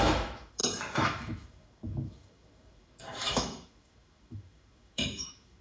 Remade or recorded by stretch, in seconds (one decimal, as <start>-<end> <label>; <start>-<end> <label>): 0.0-5.6 remade